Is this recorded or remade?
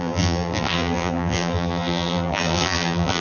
remade